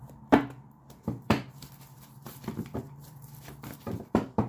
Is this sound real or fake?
fake